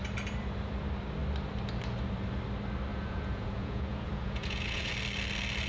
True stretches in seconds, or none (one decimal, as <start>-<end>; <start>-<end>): 0.0-2.9; 4.9-5.7